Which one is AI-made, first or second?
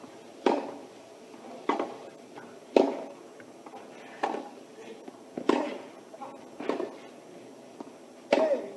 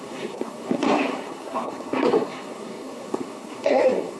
second